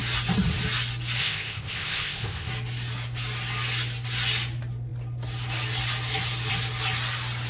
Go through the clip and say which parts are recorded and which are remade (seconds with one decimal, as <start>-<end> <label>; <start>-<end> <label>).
0.0-1.2 recorded; 1.2-2.5 remade; 2.5-7.5 recorded